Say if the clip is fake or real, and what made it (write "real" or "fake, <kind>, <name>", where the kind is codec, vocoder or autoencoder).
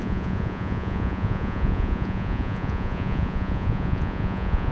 fake, vocoder, Vocos